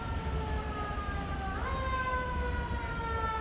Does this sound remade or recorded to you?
recorded